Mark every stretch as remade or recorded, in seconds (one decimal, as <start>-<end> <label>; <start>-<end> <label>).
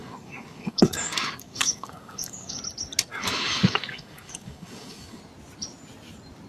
0.0-2.6 remade; 2.6-3.1 recorded; 3.1-5.2 remade; 5.2-6.5 recorded